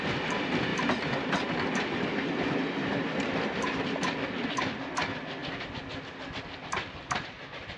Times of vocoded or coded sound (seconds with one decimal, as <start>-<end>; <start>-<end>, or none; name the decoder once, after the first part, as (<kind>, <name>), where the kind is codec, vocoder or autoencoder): none